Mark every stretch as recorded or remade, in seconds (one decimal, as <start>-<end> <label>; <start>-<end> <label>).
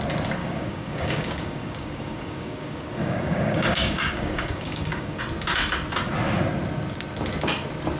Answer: 0.0-0.4 recorded; 0.4-5.2 remade; 5.2-8.0 recorded